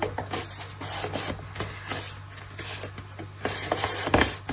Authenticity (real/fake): real